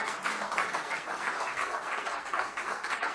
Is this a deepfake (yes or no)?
yes